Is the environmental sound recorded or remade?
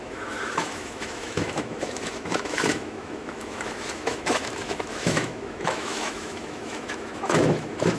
remade